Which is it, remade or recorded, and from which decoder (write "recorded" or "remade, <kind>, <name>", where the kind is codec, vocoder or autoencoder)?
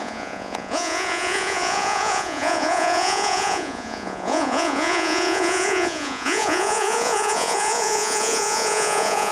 remade, vocoder, Vocos